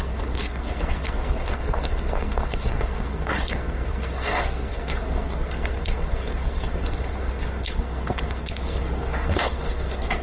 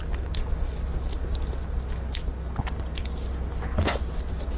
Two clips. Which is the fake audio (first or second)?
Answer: first